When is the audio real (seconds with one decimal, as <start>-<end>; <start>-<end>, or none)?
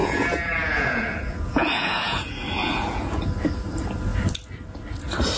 3.2-5.4